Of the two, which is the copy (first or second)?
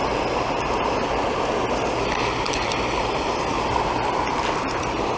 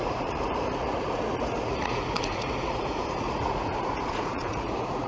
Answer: second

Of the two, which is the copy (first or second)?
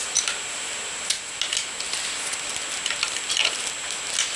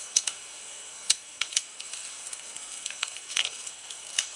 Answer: second